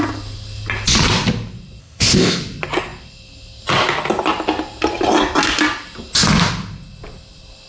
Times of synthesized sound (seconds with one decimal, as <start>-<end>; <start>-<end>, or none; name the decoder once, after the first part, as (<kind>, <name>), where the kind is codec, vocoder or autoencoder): 1.8-2.4 (codec, ZipCodec)